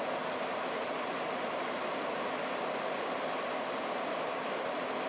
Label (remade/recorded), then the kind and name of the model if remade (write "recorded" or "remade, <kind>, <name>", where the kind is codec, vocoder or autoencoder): recorded